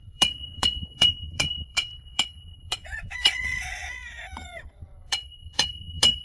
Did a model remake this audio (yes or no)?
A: yes